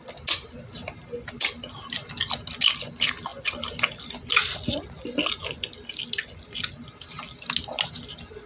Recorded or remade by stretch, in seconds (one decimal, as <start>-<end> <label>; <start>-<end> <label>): 0.0-8.5 recorded